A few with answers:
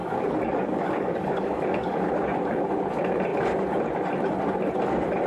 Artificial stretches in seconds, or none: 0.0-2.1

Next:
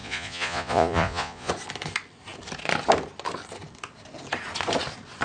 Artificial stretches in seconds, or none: 0.0-1.5

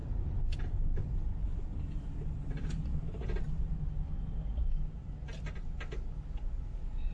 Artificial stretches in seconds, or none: none

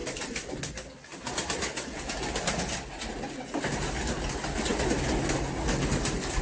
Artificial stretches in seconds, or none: 0.0-0.5; 1.1-1.6

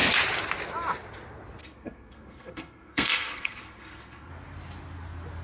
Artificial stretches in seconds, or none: 1.6-4.3

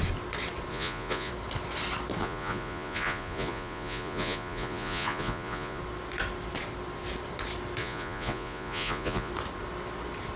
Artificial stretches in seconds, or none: 0.7-1.3; 2.2-5.8; 7.8-9.3